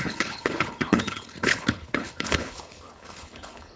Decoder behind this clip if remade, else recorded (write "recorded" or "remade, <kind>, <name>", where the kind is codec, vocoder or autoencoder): remade, codec, HILCodec